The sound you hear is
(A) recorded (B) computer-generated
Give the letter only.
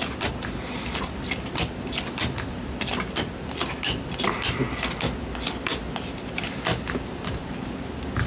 A